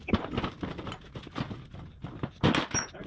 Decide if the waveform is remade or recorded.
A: recorded